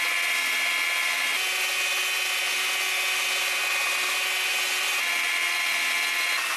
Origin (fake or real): real